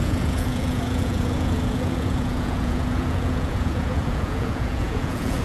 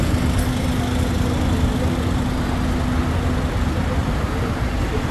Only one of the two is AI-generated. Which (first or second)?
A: first